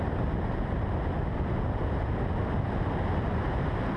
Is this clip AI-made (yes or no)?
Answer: no